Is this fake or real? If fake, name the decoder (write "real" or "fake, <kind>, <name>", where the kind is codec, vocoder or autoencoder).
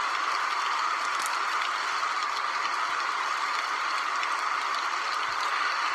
real